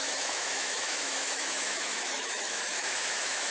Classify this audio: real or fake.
fake